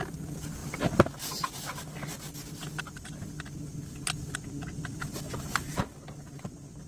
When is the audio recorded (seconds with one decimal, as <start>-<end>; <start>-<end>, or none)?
0.0-6.9